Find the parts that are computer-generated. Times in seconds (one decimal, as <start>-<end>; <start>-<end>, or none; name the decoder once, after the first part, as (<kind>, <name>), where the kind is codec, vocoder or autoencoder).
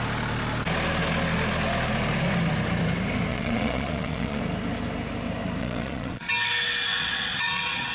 3.3-4.4 (vocoder, Vocos); 5.6-6.3; 6.9-7.9